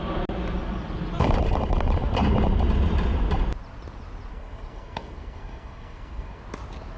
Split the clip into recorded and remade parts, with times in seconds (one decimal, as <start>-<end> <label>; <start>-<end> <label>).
0.0-4.3 recorded; 4.3-6.4 remade; 6.4-7.0 recorded